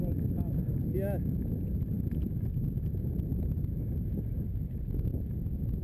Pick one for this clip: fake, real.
real